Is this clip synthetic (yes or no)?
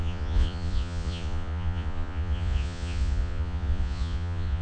yes